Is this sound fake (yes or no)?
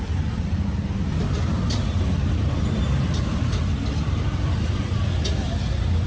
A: yes